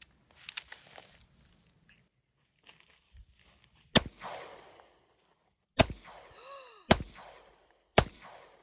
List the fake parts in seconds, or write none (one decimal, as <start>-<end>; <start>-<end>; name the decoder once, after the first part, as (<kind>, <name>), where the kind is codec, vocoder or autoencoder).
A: 5.8-8.2 (vocoder, BigVGAN v2)